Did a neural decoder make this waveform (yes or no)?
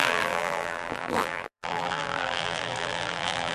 yes